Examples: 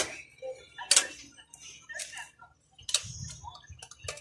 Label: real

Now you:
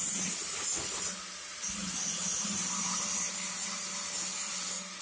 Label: real